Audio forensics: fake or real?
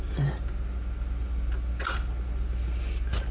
real